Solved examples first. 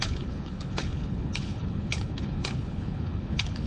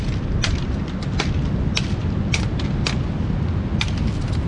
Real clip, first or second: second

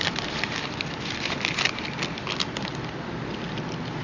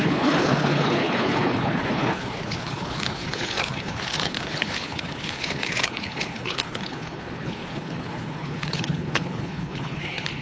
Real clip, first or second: first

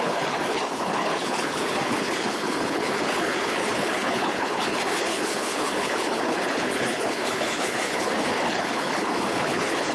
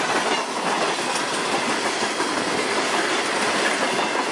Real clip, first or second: second